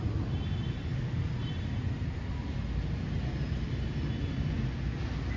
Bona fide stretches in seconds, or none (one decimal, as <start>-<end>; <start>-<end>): 0.0-5.4

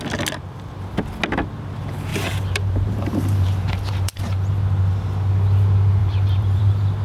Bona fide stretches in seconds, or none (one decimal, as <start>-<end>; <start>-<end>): 0.0-2.1; 4.6-6.0; 6.6-7.0

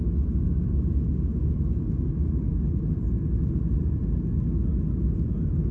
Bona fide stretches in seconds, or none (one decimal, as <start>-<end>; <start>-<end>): 0.0-5.7

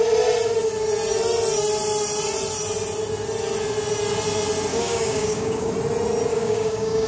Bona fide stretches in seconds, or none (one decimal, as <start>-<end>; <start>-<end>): 0.0-4.7; 5.7-6.3

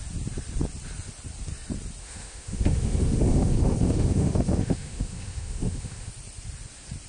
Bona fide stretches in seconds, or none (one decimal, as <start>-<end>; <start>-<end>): 0.0-2.0; 6.1-7.1